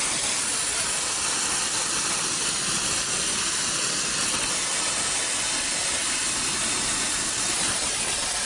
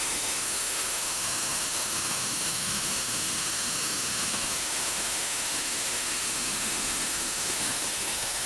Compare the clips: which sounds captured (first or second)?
first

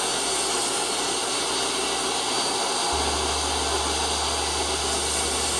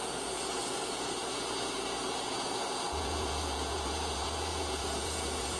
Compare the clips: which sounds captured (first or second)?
first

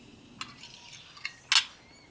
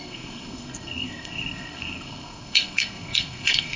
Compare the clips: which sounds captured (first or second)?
first